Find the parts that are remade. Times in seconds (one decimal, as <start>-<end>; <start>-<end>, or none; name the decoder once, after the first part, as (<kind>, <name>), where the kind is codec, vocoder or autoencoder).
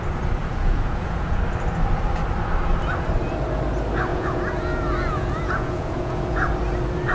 0.4-1.4 (vocoder, Vocos); 4.1-6.5